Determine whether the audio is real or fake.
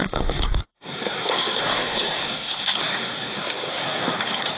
fake